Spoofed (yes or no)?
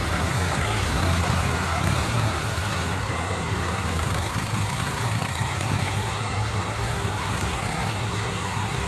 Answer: yes